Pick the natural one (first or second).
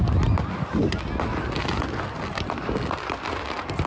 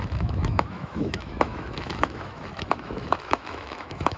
first